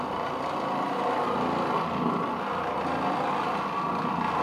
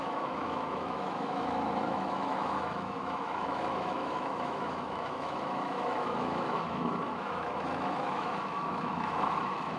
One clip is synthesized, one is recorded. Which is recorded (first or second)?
first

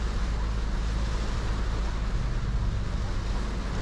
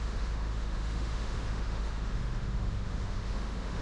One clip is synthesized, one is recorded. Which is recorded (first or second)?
first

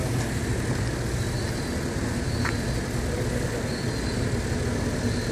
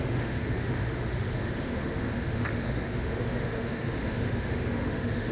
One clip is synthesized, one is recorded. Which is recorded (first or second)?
first